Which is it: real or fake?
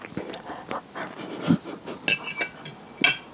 real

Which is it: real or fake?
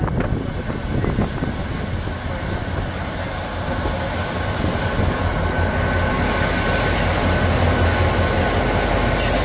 real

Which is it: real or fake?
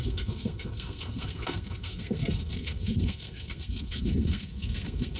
fake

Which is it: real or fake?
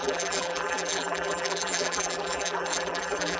fake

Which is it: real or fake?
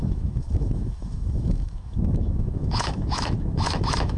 fake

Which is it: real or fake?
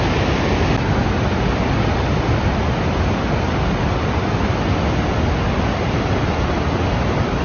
real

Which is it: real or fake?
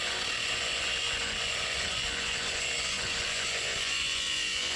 fake